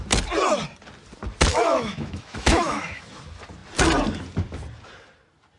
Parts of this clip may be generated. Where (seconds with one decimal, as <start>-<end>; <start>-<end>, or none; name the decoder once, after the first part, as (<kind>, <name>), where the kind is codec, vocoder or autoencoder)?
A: 1.5-3.2 (autoencoder, DAC-VAE)